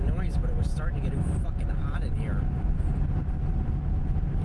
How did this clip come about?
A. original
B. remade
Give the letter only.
A